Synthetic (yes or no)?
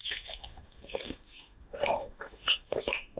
yes